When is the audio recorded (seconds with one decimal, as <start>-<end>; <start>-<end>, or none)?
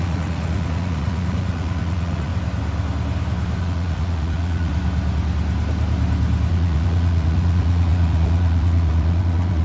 2.3-3.6; 4.7-6.5